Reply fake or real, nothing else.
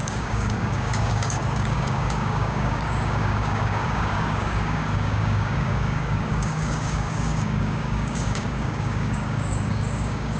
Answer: fake